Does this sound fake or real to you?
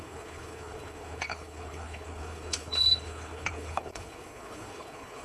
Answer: fake